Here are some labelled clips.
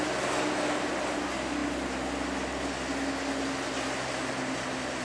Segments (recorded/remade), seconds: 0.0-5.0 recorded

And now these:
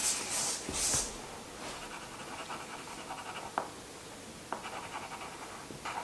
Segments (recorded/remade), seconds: 0.0-6.0 recorded

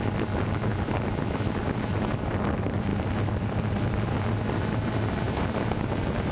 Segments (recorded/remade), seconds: 0.0-0.7 recorded; 0.7-1.6 remade; 1.6-2.9 recorded; 2.9-5.7 remade; 5.7-6.3 recorded

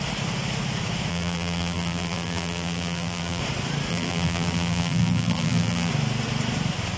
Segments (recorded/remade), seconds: 0.0-1.1 recorded; 1.1-3.4 remade; 3.4-3.9 recorded; 3.9-5.9 remade; 5.9-7.0 recorded

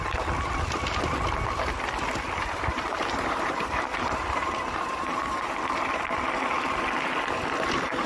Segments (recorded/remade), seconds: 0.0-2.4 recorded; 2.4-5.5 remade; 5.5-8.1 recorded